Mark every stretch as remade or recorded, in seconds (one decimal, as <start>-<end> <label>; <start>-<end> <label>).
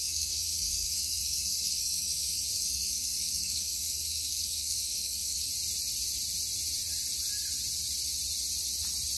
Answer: 0.0-5.5 remade; 5.5-9.2 recorded